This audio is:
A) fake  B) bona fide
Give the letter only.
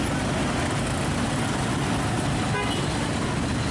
B